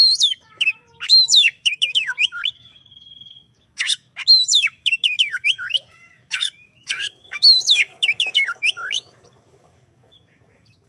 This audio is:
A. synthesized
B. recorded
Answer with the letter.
A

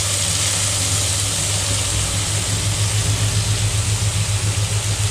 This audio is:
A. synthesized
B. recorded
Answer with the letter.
B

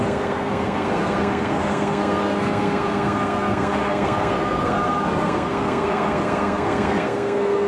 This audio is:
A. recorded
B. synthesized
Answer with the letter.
B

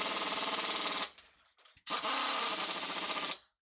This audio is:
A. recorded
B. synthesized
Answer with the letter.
A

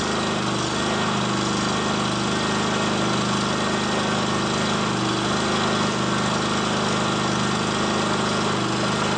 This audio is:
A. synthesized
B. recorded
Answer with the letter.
B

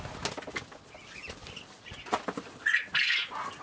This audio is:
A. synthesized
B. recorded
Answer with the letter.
B